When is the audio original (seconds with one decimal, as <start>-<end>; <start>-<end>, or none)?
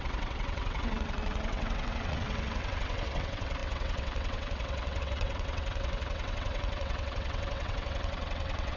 none